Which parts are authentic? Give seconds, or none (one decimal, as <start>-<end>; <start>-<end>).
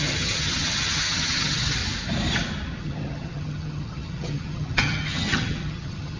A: 1.8-2.8